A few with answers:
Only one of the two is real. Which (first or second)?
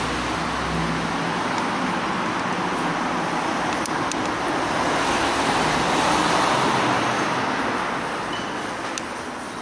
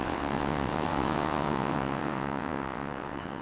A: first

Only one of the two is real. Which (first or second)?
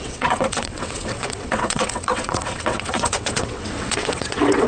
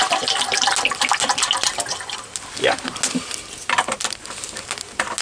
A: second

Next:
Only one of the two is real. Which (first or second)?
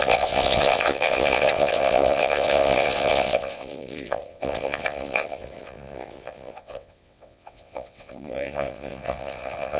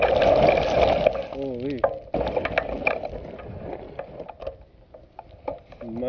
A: second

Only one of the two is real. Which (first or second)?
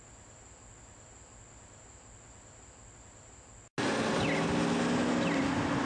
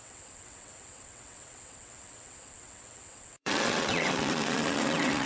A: first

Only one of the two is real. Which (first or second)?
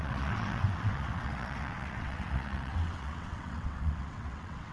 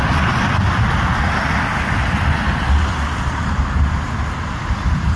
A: second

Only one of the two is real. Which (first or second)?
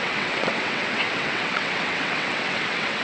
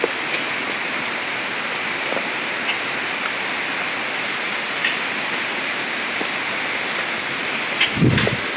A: second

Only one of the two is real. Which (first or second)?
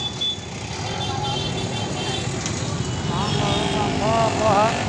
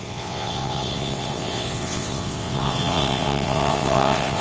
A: first